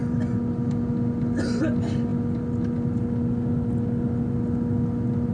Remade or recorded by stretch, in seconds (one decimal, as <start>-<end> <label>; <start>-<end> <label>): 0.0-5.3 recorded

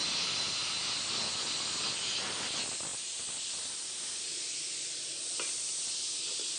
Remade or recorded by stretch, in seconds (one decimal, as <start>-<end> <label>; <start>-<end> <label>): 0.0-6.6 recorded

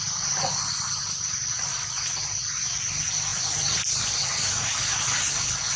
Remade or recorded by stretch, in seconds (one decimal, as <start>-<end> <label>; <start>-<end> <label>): 0.0-5.8 recorded

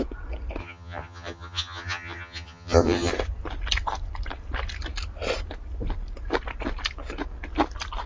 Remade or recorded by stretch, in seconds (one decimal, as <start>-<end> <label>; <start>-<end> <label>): 0.0-0.6 recorded; 0.6-3.1 remade; 3.1-8.1 recorded

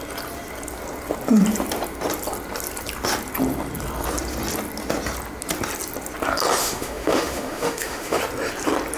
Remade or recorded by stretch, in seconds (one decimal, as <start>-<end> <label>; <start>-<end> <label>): 0.0-6.6 recorded; 6.6-8.2 remade; 8.2-9.0 recorded